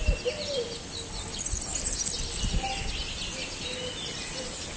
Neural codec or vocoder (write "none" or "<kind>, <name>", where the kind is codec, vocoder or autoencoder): none